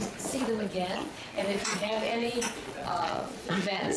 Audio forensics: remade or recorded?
remade